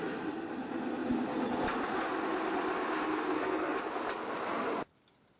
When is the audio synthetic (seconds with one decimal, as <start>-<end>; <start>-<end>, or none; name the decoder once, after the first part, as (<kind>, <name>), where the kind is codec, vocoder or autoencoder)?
3.1-3.8 (codec, SNAC)